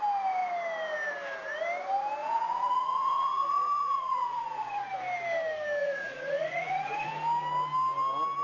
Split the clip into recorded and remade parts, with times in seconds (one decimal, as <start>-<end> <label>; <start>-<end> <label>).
0.0-2.2 recorded; 2.2-4.8 remade; 4.8-5.8 recorded; 5.8-7.1 remade; 7.1-8.4 recorded